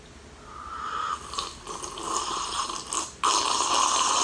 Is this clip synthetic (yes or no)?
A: no